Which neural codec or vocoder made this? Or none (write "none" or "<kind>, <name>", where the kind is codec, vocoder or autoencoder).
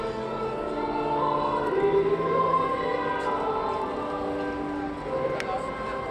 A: none